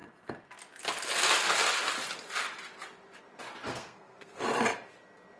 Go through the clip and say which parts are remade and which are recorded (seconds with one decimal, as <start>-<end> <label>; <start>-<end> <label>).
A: 0.0-3.7 recorded; 3.7-4.4 remade; 4.4-5.4 recorded

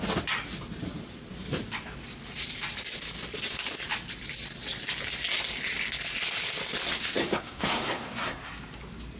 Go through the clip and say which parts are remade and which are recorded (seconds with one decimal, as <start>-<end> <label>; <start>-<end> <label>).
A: 0.0-7.0 recorded; 7.0-8.5 remade; 8.5-9.2 recorded

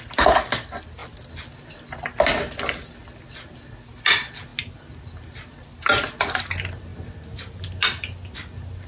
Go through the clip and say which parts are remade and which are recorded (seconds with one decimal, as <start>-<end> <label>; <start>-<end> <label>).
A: 0.0-8.9 recorded

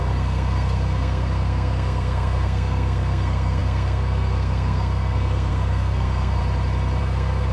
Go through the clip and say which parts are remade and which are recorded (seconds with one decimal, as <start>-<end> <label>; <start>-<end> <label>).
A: 0.0-6.4 remade; 6.4-7.0 recorded; 7.0-7.5 remade

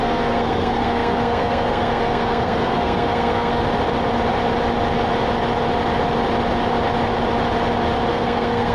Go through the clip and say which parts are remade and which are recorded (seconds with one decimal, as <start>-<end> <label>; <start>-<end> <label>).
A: 0.0-3.6 remade; 3.6-8.1 recorded; 8.1-8.7 remade

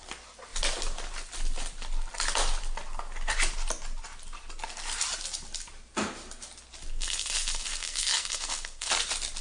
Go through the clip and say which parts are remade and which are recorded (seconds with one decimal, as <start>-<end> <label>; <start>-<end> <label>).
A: 0.0-6.9 recorded; 6.9-8.9 remade; 8.9-9.4 recorded

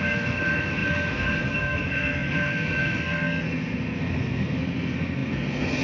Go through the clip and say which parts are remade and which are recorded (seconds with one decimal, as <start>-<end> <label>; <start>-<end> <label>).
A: 0.0-5.8 remade